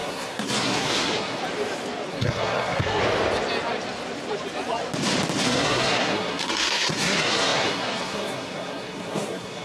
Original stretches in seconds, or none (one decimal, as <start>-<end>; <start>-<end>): 1.4-2.1; 3.0-5.4